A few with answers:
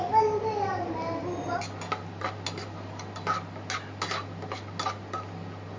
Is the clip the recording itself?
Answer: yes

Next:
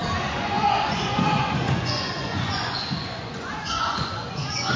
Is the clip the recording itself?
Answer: no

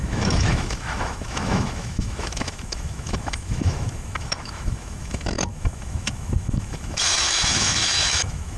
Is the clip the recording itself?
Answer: no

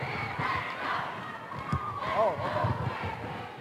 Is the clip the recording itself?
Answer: yes